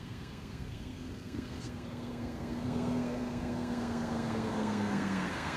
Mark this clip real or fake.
fake